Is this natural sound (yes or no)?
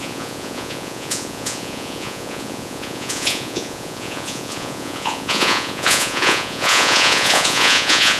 no